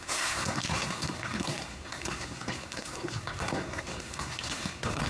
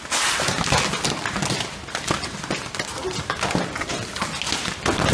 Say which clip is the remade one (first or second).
first